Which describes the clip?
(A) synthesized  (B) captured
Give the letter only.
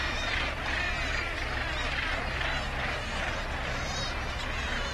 B